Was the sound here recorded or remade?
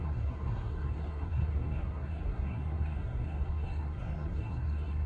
remade